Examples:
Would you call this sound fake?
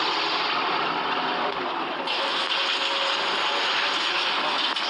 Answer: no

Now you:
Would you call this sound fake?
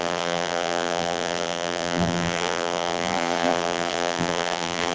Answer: yes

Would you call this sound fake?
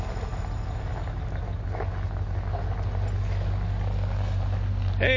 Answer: no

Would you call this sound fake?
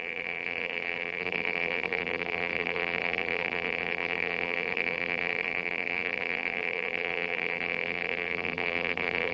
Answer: yes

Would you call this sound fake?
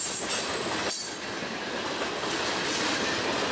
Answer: no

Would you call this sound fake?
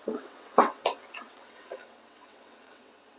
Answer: yes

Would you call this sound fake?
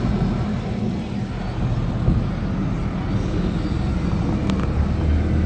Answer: no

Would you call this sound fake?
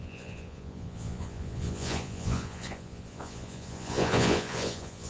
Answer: yes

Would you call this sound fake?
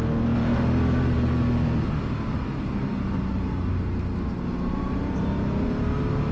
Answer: no